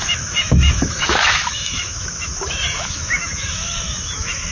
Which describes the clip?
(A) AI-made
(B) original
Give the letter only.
A